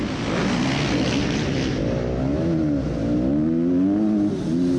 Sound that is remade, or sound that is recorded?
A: recorded